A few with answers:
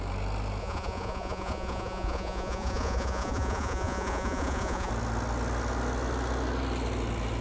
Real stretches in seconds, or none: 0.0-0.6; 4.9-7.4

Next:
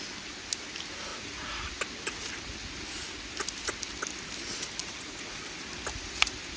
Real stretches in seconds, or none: 0.0-1.1; 1.7-4.8; 5.4-6.6

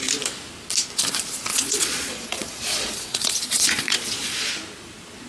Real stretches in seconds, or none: 0.0-1.5; 4.5-5.3

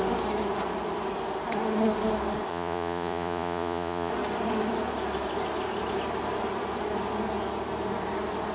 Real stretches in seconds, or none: 0.0-2.5; 4.1-8.5

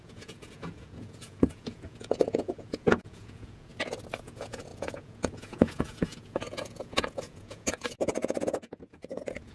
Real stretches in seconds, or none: 3.7-4.2

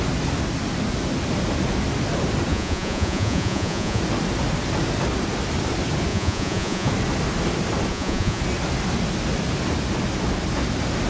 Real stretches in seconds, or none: 0.0-2.5; 4.0-6.1; 6.9-7.9; 8.4-11.1

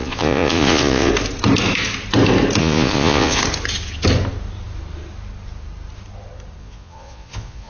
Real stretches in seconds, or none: 1.1-2.6; 3.4-6.6

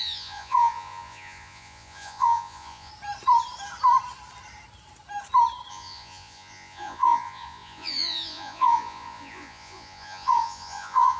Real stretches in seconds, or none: 2.9-5.7